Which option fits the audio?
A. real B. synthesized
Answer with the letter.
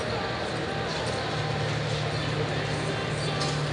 A